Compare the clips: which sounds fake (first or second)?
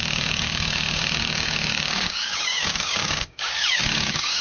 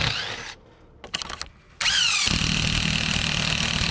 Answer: first